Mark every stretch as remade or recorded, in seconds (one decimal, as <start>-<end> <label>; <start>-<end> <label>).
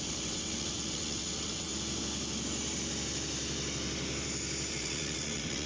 0.0-1.7 remade; 1.7-4.7 recorded; 4.7-5.7 remade